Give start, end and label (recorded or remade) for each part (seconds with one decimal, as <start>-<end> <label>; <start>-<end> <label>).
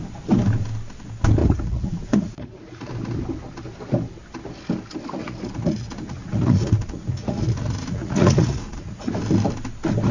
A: 0.0-1.4 recorded; 1.4-2.9 remade; 2.9-5.2 recorded; 5.2-9.1 remade; 9.1-10.1 recorded